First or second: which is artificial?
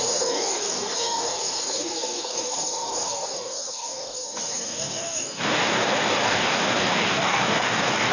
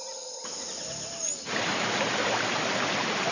first